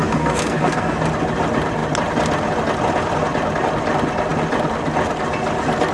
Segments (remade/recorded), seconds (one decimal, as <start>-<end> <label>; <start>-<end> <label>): 0.0-1.0 remade; 1.0-5.9 recorded